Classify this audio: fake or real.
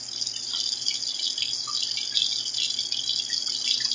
real